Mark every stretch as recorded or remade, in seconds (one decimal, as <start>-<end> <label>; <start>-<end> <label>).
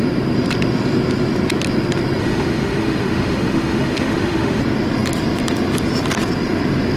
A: 0.0-2.2 recorded; 2.2-4.6 remade; 4.6-7.0 recorded